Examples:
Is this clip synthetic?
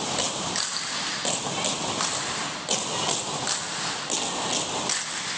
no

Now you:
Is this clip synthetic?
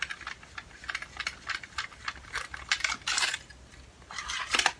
no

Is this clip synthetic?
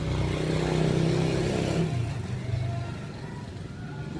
no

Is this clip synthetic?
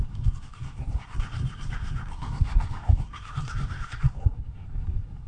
yes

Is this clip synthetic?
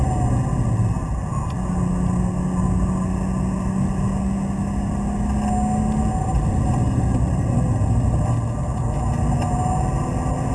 no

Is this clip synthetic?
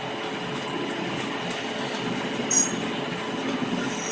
no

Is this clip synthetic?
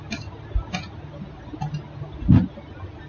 no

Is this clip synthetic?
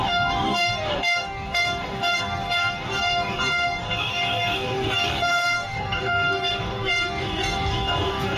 yes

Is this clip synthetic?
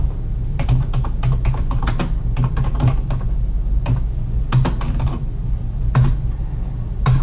no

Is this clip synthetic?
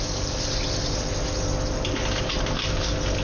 no